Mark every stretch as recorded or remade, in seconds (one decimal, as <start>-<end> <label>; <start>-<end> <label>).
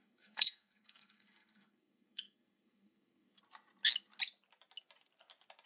0.0-3.4 remade; 3.4-5.7 recorded